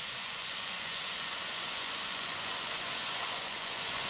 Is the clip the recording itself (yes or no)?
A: no